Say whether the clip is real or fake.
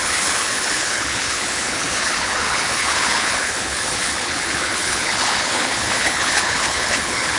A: fake